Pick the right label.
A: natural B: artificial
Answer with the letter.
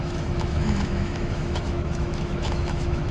B